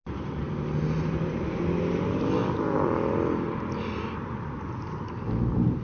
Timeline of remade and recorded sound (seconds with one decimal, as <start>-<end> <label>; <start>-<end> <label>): 0.0-2.4 recorded; 2.4-5.8 remade